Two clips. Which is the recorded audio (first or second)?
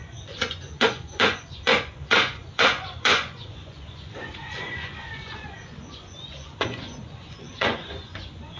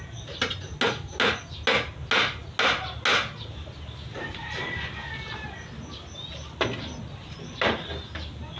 second